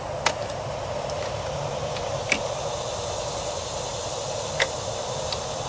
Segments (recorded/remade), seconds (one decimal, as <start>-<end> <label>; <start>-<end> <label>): 0.0-0.4 recorded; 0.4-2.1 remade; 2.1-5.7 recorded